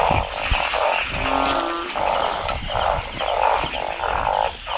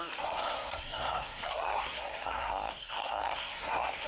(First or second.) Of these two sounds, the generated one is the second